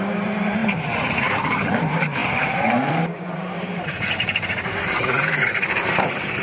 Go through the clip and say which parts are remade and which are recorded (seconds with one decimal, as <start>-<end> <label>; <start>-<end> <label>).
0.0-6.4 remade